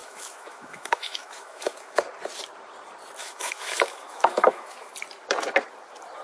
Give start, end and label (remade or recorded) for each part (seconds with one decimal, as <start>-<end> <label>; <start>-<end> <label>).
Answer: 0.0-2.0 remade; 2.0-3.2 recorded; 3.2-4.9 remade; 4.9-6.2 recorded